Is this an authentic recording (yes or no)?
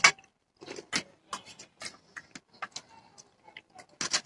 yes